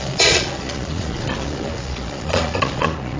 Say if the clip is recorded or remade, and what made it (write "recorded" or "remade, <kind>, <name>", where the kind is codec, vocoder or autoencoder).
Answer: remade, vocoder, Vocos